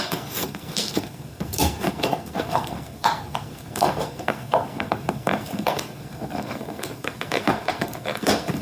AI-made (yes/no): yes